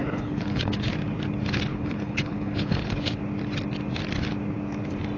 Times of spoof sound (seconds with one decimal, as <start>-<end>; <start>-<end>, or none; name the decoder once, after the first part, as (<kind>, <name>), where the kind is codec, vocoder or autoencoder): 0.0-0.9 (codec, HILCodec); 1.7-3.2